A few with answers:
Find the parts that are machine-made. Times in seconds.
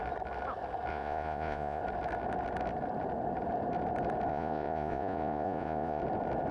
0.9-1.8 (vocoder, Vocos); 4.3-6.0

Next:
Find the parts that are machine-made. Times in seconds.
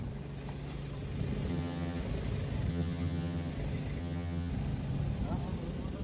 1.5-2.0 (vocoder, HiFi-GAN); 2.7-3.5; 4.0-4.5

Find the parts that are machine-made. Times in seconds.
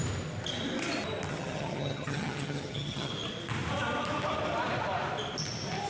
1.3-3.1 (vocoder, HiFi-GAN)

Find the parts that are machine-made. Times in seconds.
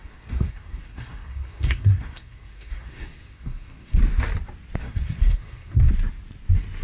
0.0-4.0 (codec, SNAC); 4.8-5.9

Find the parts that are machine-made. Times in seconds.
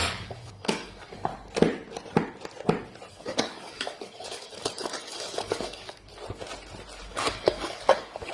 0.0-1.3 (codec, DAC); 3.1-6.1; 7.0-8.3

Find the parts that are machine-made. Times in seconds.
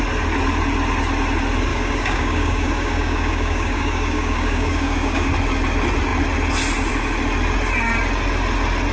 1.7-5.3 (codec, DAC)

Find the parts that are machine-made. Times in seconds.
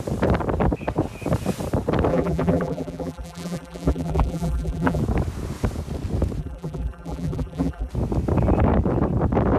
2.1-5.0 (vocoder, BigVGAN v2); 6.4-7.9